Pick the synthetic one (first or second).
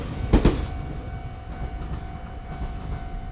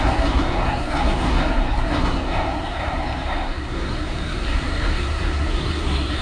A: second